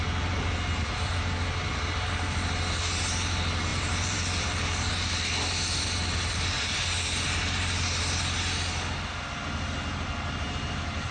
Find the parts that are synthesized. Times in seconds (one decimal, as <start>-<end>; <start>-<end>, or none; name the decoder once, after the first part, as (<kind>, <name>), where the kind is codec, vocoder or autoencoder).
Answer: 3.7-4.9 (vocoder, BigVGAN v2)